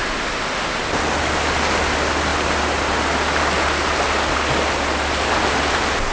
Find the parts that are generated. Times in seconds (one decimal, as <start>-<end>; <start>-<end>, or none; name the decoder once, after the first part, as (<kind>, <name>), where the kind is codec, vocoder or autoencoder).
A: none